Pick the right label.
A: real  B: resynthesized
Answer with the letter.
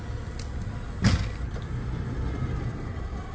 A